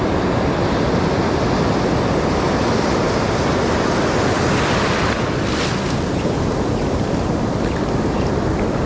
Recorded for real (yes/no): yes